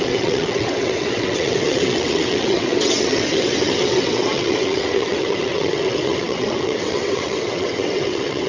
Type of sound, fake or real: fake